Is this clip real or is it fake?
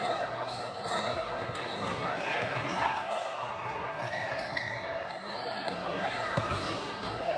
fake